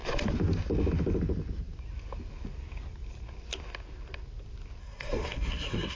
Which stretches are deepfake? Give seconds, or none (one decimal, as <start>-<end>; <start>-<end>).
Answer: 4.8-6.0